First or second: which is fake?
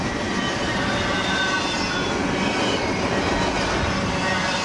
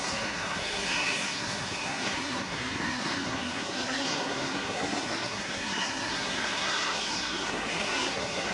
second